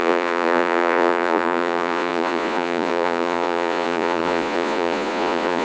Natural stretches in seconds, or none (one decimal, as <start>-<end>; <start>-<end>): none